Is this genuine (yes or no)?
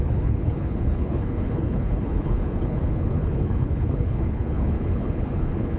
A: no